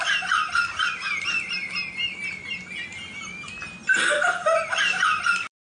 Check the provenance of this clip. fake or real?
real